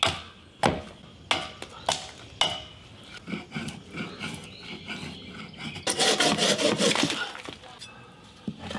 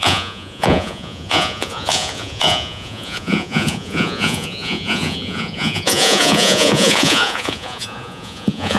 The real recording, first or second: first